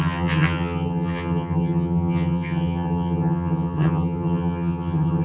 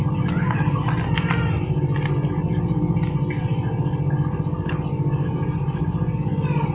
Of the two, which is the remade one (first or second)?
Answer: first